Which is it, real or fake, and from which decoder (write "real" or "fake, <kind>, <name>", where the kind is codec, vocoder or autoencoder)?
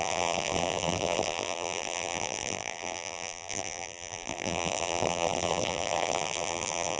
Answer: fake, vocoder, BigVGAN v2